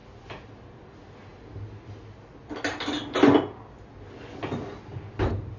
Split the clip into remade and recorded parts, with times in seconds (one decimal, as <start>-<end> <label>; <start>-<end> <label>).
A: 0.0-5.6 recorded